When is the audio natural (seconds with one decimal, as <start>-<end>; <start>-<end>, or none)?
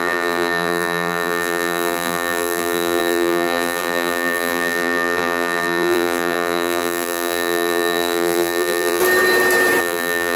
9.0-9.8